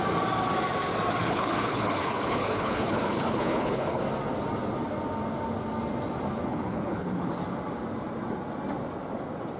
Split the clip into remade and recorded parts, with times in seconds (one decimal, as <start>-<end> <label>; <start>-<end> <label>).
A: 0.0-1.2 recorded; 1.2-4.0 remade; 4.0-6.5 recorded; 6.5-7.3 remade; 7.3-9.6 recorded